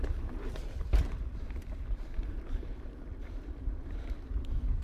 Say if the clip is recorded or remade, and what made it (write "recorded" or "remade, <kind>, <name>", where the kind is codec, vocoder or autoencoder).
remade, vocoder, BigVGAN v2